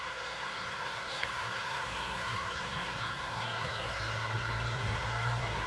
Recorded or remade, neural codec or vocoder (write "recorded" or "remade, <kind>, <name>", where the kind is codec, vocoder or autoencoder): remade, codec, SNAC